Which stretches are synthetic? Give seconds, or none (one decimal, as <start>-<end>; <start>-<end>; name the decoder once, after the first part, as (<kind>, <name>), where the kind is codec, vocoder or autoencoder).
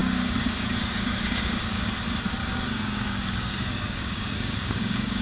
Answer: 0.0-1.9 (codec, DAC); 2.4-5.2